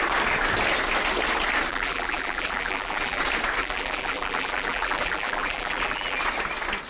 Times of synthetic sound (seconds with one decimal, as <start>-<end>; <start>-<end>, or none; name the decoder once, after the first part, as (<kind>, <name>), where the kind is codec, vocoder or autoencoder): 1.7-3.2 (vocoder, BigVGAN v2); 3.6-6.2